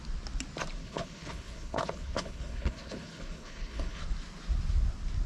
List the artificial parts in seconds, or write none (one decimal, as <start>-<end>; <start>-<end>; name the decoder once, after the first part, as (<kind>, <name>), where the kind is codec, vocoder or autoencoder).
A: 0.8-4.0 (codec, HILCodec)